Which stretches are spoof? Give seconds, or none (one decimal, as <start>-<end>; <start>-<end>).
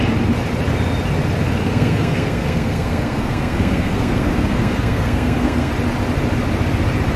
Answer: 1.6-5.7